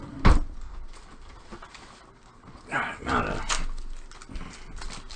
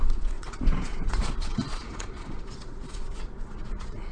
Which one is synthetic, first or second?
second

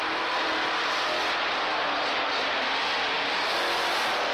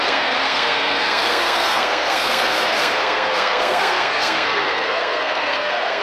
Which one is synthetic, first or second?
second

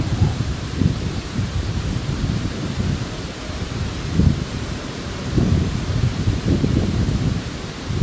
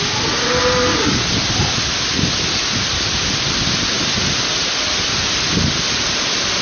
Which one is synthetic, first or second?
first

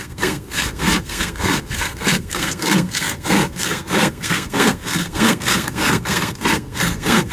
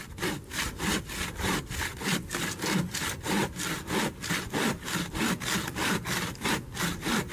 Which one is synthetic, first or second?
first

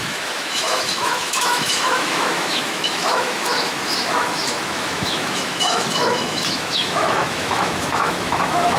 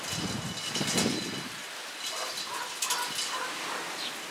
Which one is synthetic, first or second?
first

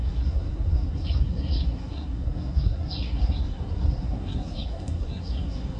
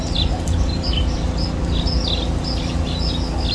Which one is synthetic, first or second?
first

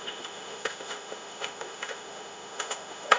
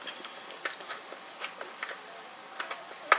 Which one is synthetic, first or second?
first